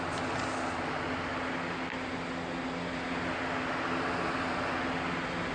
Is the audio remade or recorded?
recorded